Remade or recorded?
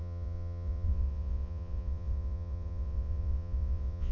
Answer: remade